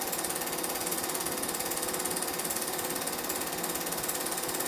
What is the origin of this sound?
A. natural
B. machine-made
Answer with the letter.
A